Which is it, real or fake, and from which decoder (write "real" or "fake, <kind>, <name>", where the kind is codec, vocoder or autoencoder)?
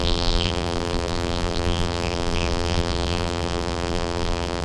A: fake, vocoder, BigVGAN v2